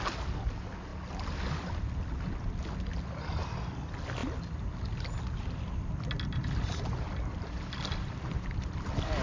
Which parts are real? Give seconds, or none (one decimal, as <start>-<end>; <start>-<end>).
0.0-9.2